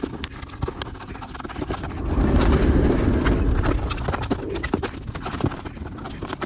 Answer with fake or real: real